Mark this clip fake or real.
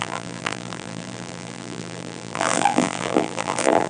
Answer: fake